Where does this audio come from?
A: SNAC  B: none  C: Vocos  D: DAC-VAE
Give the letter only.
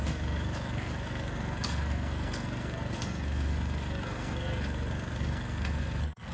A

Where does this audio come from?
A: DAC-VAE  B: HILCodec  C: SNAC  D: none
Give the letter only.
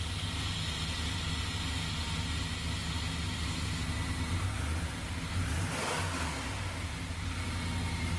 D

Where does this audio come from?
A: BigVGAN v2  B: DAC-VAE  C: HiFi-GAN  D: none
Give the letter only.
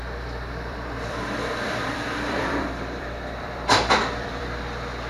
A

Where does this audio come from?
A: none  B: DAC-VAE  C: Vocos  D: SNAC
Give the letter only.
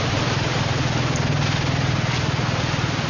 A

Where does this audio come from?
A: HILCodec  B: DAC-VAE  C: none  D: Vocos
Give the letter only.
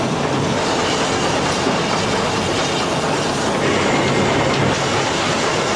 C